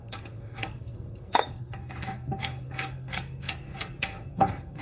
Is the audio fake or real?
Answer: fake